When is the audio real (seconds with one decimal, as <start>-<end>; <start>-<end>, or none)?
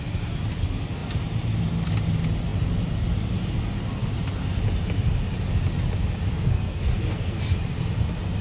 0.0-6.3; 7.4-8.4